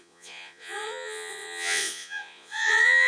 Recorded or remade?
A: remade